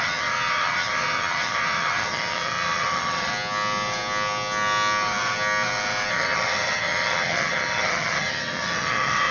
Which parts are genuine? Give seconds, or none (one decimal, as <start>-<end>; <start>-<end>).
3.3-6.1